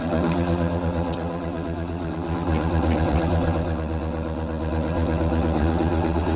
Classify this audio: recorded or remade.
remade